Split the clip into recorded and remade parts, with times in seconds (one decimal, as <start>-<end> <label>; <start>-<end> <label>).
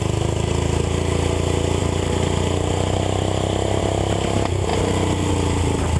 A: 0.0-6.0 recorded